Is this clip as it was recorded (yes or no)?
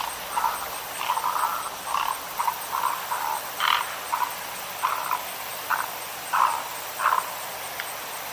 yes